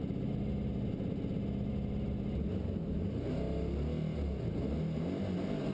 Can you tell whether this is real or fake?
real